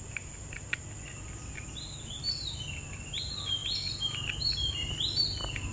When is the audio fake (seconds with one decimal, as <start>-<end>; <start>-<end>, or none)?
3.6-4.5